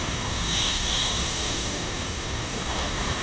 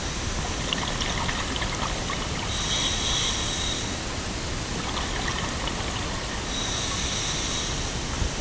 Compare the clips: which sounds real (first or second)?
second